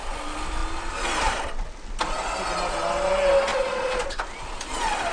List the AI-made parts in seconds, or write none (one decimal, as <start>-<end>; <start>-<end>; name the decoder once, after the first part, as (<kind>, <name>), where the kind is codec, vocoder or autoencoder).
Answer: 3.5-4.2 (vocoder, Vocos)